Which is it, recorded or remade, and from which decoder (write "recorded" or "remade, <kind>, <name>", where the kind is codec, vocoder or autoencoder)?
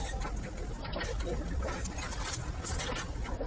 recorded